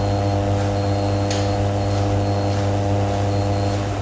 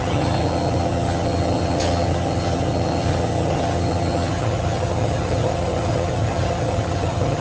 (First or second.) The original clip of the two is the first